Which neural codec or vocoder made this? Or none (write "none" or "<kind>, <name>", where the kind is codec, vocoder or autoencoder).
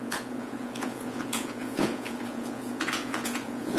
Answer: vocoder, Vocos